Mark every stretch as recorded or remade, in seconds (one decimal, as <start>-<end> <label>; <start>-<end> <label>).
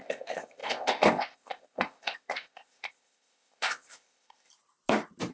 0.0-4.5 remade; 4.5-5.3 recorded